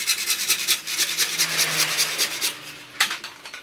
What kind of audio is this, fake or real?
real